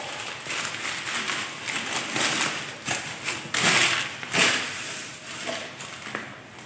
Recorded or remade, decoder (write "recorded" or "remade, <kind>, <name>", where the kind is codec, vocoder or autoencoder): recorded